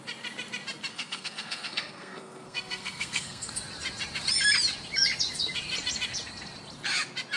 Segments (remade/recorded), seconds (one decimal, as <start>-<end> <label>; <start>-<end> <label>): 0.0-0.9 recorded; 0.9-3.5 remade; 3.5-7.4 recorded